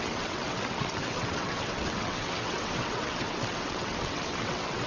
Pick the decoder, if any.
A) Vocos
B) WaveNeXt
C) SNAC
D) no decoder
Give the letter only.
B